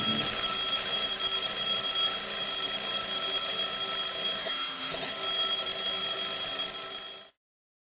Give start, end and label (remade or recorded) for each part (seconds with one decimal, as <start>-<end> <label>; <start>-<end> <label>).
0.0-4.4 recorded; 4.4-5.1 remade; 5.1-8.0 recorded